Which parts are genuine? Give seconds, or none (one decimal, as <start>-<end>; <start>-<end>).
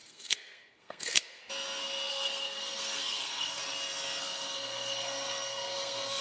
1.4-2.1; 3.6-4.2